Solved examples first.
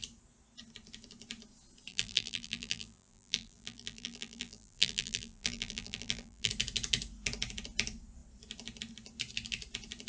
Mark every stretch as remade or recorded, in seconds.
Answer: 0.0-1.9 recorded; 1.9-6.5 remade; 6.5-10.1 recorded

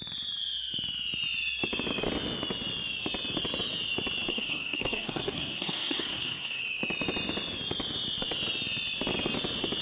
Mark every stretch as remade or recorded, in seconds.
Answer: 0.0-4.3 recorded; 4.3-6.6 remade; 6.6-9.8 recorded

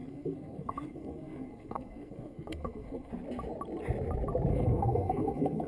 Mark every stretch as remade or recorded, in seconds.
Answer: 0.0-3.1 remade; 3.1-4.5 recorded; 4.5-5.7 remade